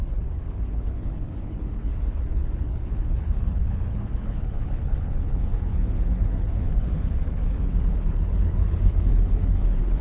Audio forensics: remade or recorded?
remade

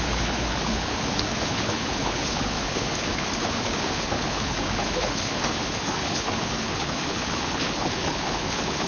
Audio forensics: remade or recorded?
remade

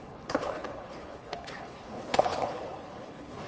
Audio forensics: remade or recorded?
remade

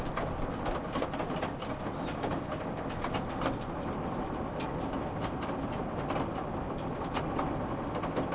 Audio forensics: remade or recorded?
recorded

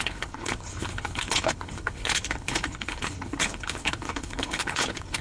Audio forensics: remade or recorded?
remade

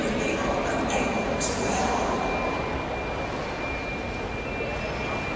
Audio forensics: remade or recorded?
recorded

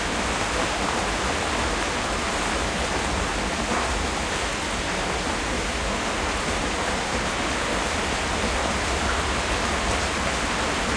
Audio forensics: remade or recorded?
recorded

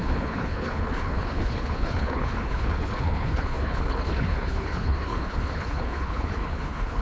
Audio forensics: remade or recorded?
remade